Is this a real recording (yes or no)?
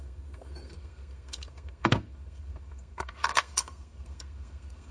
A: no